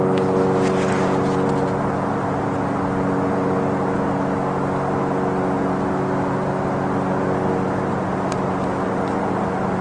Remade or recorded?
recorded